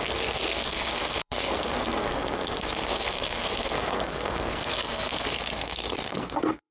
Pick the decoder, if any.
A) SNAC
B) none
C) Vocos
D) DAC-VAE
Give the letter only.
A